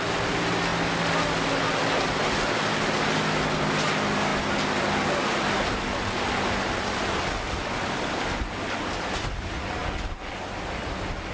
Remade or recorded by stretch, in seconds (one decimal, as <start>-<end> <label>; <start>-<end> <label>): 0.0-11.3 recorded